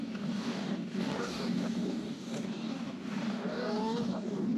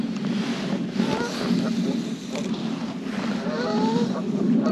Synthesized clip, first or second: first